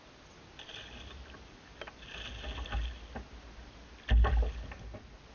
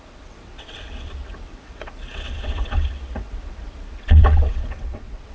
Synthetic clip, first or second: second